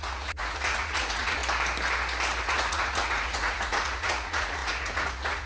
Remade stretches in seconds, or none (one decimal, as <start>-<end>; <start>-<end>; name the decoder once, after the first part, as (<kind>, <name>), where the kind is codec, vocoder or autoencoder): 0.0-1.4 (vocoder, Vocos); 2.4-5.5